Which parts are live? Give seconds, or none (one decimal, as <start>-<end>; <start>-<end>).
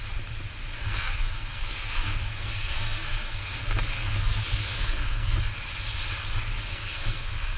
0.0-0.8; 5.4-6.7